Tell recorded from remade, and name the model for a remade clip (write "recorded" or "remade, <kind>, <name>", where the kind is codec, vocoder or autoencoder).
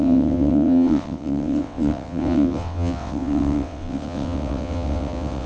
remade, vocoder, WaveNeXt